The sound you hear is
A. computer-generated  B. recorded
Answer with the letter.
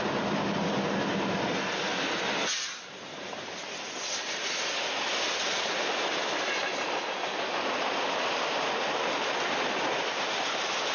B